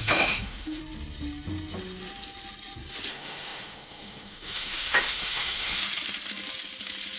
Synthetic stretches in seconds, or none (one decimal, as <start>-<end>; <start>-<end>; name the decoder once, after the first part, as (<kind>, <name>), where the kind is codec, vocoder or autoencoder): 0.0-0.8 (autoencoder, DAC-VAE); 3.1-5.8

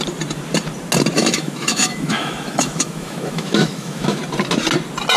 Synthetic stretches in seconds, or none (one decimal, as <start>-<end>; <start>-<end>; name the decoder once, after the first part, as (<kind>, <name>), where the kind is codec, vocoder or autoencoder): 1.2-4.2 (autoencoder, DAC-VAE)

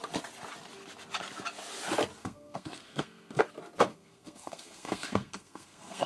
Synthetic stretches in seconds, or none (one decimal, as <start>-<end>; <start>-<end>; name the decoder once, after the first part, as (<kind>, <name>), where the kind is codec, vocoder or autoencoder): 2.2-3.4 (codec, SNAC); 3.9-6.1

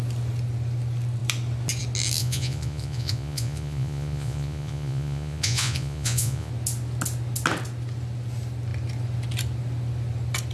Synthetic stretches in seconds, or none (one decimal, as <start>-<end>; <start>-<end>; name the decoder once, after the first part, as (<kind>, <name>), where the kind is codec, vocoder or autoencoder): 2.2-6.5 (vocoder, Vocos)

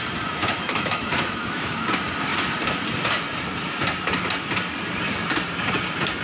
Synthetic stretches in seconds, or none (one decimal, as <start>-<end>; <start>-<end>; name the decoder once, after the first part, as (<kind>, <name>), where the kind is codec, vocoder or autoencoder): 0.4-1.9 (autoencoder, DAC-VAE)